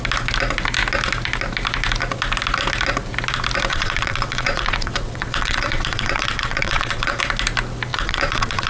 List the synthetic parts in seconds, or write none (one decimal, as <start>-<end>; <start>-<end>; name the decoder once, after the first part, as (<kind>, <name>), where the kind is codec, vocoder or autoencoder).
3.7-7.2 (vocoder, WaveNeXt); 7.9-8.7